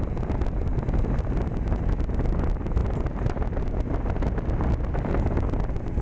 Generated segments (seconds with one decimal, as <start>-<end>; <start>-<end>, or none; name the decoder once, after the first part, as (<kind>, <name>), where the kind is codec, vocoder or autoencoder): none